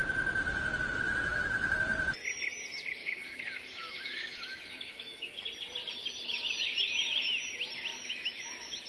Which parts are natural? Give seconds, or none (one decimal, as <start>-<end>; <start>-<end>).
0.0-1.3; 1.8-3.0; 5.4-7.9; 8.5-8.9

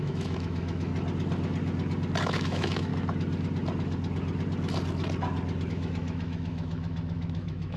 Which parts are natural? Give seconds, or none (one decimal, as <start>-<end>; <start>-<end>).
0.9-2.2; 2.9-5.7